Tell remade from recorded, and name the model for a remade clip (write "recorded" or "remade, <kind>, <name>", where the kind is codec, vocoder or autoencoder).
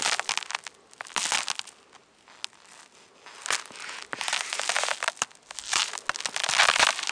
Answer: recorded